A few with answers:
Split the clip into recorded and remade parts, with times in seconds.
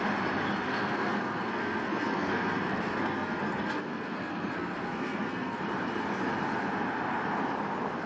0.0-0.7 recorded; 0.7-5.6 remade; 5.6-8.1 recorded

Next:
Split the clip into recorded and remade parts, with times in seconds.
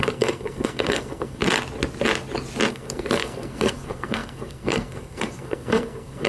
0.0-1.4 remade; 1.4-2.7 recorded; 2.7-6.3 remade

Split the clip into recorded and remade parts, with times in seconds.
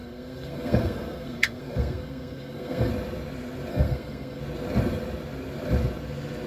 0.0-2.9 remade; 2.9-3.7 recorded; 3.7-4.4 remade; 4.4-6.5 recorded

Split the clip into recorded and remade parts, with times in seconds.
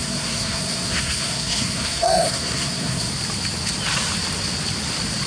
0.0-3.1 remade; 3.1-5.3 recorded